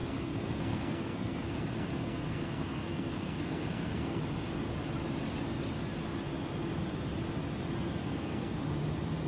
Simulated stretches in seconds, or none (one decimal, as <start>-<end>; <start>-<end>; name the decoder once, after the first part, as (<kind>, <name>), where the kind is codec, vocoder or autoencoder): 0.0-4.2 (codec, SNAC); 8.0-8.6